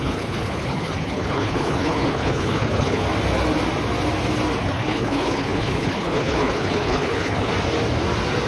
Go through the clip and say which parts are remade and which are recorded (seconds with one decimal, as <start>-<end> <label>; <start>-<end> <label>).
0.0-3.0 remade; 3.0-4.6 recorded; 4.6-7.5 remade; 7.5-8.5 recorded